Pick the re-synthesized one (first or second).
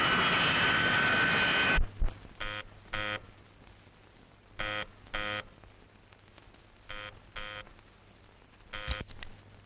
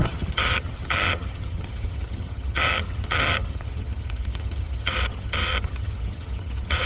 second